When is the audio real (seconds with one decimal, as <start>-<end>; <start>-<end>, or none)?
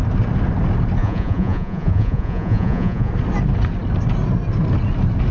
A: 0.0-1.0; 3.1-5.3